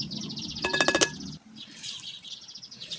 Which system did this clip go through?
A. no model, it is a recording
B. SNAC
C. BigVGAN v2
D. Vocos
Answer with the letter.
A